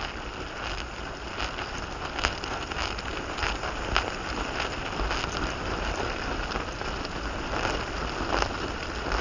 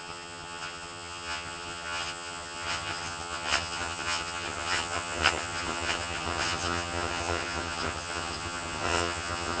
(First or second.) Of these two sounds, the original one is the first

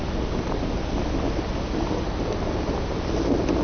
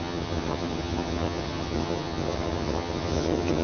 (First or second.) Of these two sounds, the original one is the first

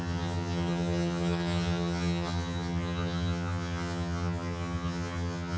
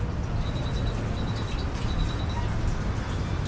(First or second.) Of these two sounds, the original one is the second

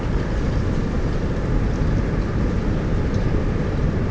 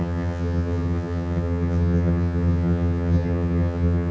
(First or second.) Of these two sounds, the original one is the first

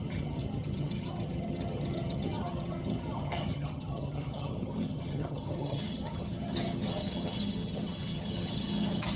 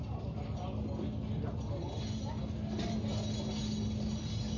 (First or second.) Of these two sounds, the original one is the second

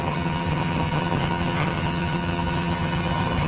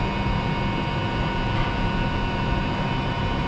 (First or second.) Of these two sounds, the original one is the second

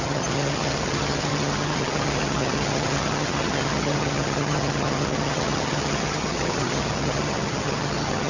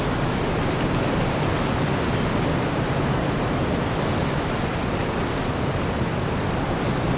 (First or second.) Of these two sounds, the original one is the second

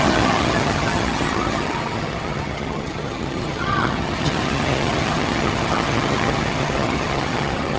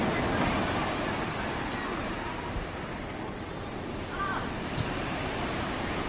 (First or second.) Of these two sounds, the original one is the second